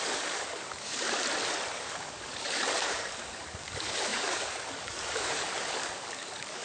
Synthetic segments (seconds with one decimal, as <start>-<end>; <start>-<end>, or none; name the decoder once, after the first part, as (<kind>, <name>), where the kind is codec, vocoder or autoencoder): 0.0-1.2 (codec, DAC); 1.7-6.6